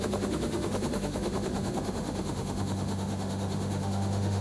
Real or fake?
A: fake